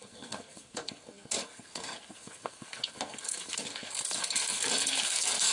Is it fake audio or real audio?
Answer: fake